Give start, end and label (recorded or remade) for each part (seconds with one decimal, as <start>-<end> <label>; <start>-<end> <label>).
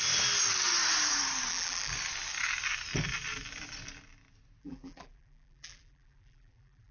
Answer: 0.0-1.5 recorded; 1.5-1.9 remade; 1.9-4.6 recorded; 4.6-6.9 remade